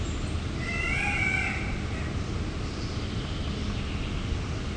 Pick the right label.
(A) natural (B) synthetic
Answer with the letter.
A